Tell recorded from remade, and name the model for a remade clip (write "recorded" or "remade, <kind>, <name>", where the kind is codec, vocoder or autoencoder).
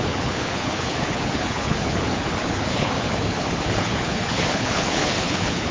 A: remade, codec, HILCodec